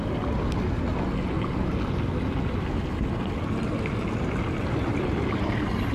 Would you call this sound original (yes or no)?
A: yes